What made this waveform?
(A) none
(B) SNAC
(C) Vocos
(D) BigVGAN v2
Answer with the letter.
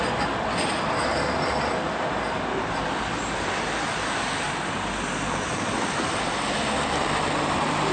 A